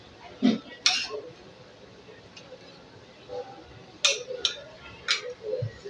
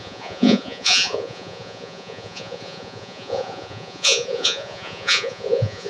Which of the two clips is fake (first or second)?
second